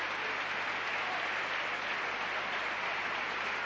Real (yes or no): yes